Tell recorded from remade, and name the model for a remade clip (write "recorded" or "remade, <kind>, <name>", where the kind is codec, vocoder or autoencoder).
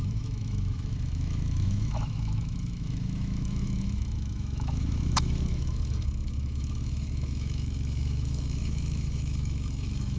remade, autoencoder, DAC-VAE